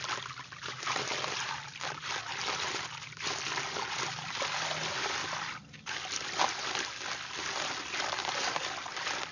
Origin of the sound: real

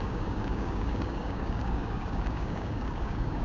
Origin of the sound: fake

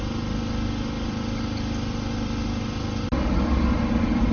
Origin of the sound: real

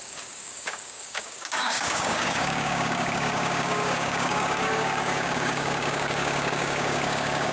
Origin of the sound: fake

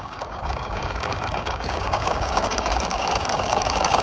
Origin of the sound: fake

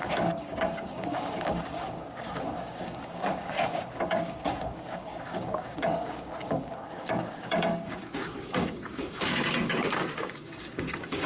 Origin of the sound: fake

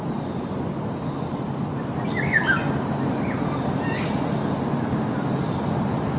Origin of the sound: real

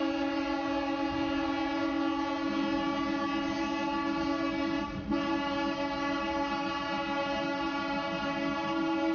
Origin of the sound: real